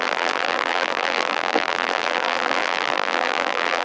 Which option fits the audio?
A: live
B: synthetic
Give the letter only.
B